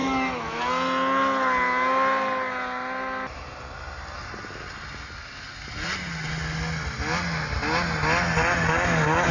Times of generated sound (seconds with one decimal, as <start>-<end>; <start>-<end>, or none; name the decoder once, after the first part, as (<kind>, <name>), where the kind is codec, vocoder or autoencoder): 0.0-0.6 (autoencoder, DAC-VAE)